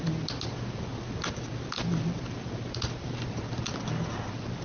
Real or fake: real